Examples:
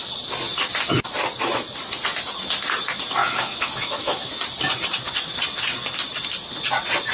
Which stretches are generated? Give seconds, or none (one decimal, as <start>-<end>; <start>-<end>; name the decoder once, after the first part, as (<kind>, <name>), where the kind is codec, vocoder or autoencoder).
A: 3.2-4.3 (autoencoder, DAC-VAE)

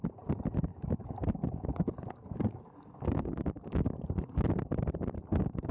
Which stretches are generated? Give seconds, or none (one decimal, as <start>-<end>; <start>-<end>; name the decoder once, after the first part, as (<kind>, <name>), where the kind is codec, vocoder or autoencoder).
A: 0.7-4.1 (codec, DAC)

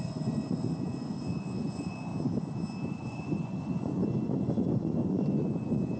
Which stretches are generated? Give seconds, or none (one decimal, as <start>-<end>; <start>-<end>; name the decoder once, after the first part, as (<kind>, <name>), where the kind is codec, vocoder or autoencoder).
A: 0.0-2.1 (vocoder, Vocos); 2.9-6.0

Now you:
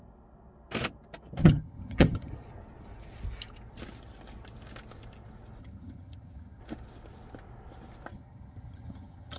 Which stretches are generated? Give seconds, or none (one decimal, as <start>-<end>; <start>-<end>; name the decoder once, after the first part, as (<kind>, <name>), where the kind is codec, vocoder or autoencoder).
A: 1.4-2.3 (vocoder, HiFi-GAN); 5.6-6.6; 8.1-9.4